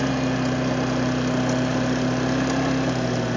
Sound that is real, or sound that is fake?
real